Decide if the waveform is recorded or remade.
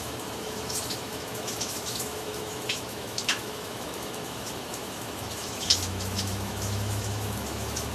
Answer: remade